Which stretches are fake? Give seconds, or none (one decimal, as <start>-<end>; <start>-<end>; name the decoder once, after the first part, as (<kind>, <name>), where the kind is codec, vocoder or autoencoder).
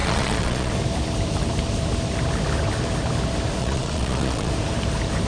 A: 0.0-0.7 (vocoder, Vocos); 3.6-4.5